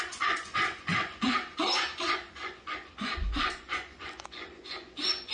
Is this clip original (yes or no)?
no